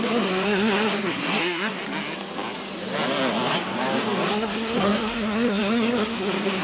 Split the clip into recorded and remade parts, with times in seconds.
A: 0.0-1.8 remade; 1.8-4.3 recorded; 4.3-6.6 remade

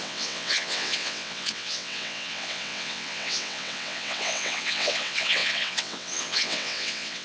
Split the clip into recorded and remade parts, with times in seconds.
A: 0.0-7.2 remade

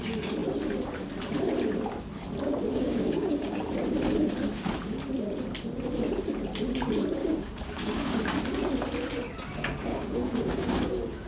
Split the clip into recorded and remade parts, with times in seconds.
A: 0.0-2.7 recorded; 2.7-3.6 remade; 3.6-7.2 recorded; 7.2-8.2 remade; 8.2-9.9 recorded; 9.9-11.3 remade

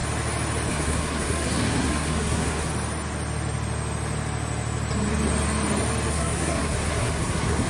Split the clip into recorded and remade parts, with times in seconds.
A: 0.0-0.7 recorded; 0.7-2.7 remade; 2.7-6.1 recorded; 6.1-7.7 remade

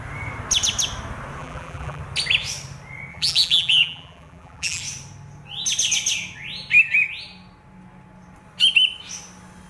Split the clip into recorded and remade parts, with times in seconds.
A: 0.0-1.4 recorded; 1.4-2.0 remade; 2.0-3.1 recorded; 3.1-4.8 remade; 4.8-9.7 recorded

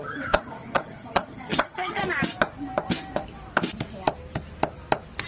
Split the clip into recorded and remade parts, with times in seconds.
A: 0.0-2.0 remade; 2.0-5.3 recorded

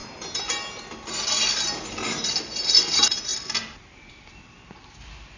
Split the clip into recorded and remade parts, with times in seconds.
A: 0.0-0.8 remade; 0.8-5.4 recorded